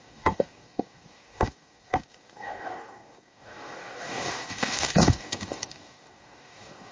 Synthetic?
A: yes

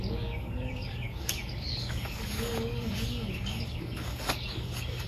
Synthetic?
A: yes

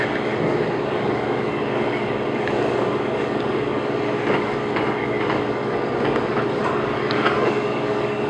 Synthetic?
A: yes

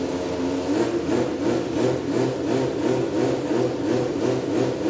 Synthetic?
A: no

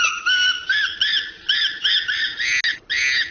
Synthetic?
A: no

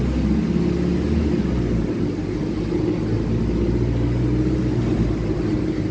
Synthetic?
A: no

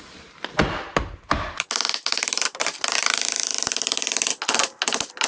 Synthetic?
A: no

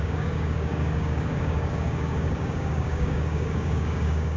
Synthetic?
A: yes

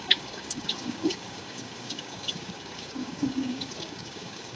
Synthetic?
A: yes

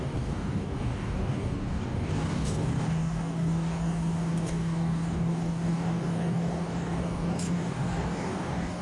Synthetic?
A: yes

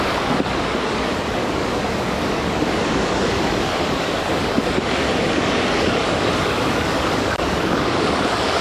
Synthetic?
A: yes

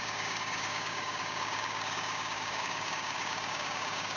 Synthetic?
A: yes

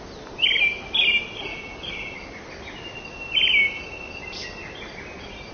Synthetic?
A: no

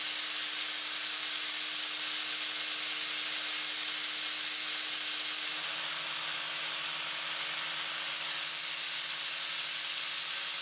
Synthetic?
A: no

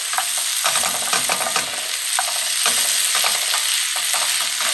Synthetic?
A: no